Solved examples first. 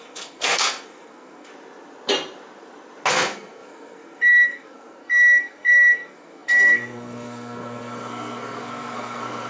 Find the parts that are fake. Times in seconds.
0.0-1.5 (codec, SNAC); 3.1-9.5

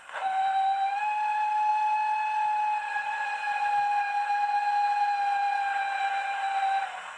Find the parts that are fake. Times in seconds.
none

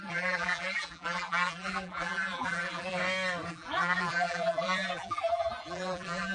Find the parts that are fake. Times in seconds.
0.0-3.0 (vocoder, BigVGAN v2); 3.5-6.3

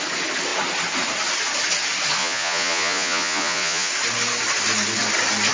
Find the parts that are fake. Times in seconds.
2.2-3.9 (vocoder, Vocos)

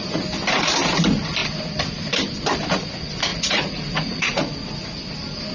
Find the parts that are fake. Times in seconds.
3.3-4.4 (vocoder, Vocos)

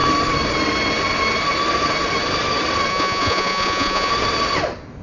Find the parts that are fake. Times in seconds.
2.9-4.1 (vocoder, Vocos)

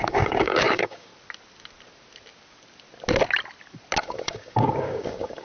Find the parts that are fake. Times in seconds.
0.0-1.1 (codec, DAC); 4.0-5.4

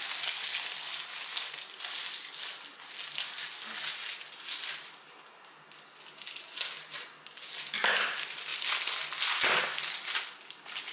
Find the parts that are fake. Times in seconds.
none